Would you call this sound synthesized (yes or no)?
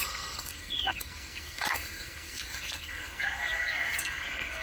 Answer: yes